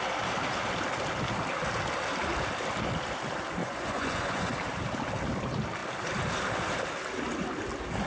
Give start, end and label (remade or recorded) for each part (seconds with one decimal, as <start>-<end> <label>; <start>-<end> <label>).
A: 0.0-3.6 recorded; 3.6-4.5 remade; 4.5-8.1 recorded

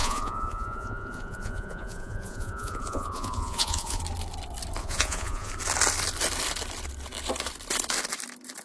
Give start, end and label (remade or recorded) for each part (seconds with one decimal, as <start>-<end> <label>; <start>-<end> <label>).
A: 0.0-4.0 remade; 4.0-4.8 recorded; 4.8-5.5 remade; 5.5-8.6 recorded

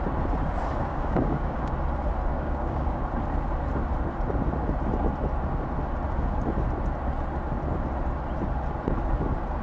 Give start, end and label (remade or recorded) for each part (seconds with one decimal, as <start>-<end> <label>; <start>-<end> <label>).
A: 0.0-0.8 recorded; 0.8-1.6 remade; 1.6-2.3 recorded; 2.3-3.0 remade; 3.0-9.6 recorded

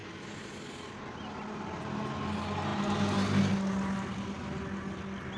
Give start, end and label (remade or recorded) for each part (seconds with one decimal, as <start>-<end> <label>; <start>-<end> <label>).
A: 0.0-5.4 recorded